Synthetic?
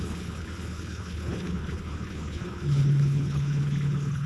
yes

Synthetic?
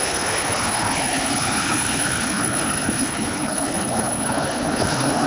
yes